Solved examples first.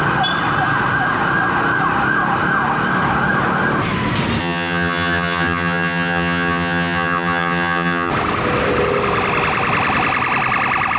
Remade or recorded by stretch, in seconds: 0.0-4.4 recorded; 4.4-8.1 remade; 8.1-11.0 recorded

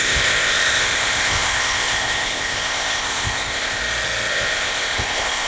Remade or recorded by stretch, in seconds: 0.0-3.8 remade; 3.8-4.3 recorded; 4.3-5.5 remade

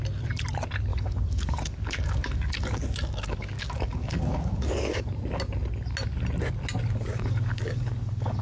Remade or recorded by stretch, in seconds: 0.0-0.9 recorded; 0.9-5.1 remade; 5.1-7.1 recorded; 7.1-8.4 remade